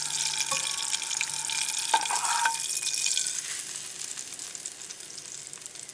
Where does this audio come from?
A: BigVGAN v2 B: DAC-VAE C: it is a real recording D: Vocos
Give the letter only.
C